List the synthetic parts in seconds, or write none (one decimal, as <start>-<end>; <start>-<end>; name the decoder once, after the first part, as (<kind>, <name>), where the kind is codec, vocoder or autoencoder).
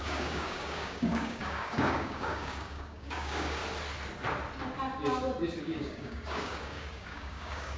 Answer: 0.0-3.6 (codec, DAC); 5.6-7.8